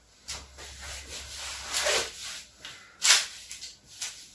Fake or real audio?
real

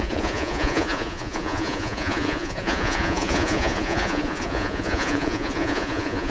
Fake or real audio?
fake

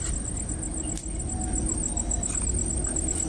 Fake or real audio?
real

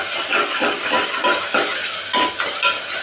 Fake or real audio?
real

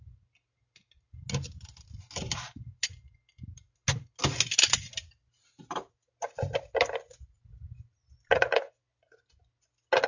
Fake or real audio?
real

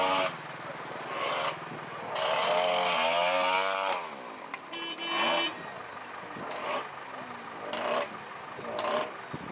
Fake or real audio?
real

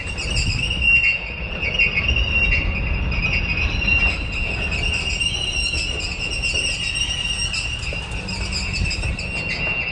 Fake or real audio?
real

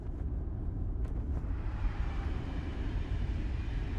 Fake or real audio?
fake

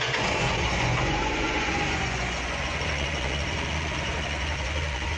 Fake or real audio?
fake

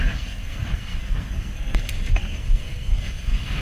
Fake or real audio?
fake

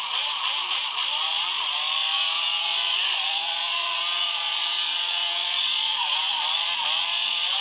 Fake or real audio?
fake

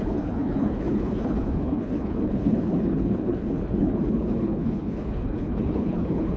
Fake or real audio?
fake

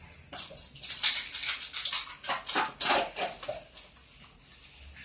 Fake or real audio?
real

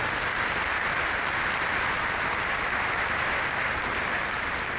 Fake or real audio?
real